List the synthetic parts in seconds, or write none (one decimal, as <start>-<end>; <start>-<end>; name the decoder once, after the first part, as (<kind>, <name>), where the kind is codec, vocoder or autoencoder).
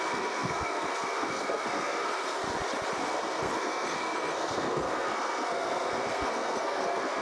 0.0-2.4 (codec, SNAC); 3.0-7.2